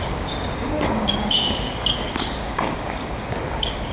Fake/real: fake